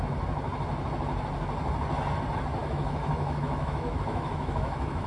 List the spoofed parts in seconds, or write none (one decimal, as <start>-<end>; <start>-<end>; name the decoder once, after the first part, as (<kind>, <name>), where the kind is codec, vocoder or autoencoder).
2.6-5.1 (autoencoder, DAC-VAE)